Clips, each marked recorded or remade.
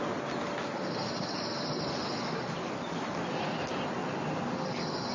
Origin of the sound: recorded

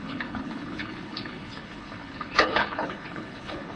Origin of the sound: remade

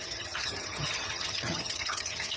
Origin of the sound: remade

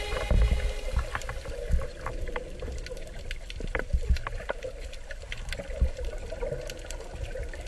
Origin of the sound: recorded